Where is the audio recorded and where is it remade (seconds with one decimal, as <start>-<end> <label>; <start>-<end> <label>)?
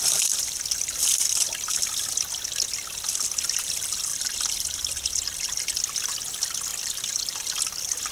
0.0-4.1 recorded; 4.1-5.4 remade; 5.4-6.7 recorded; 6.7-7.6 remade; 7.6-8.1 recorded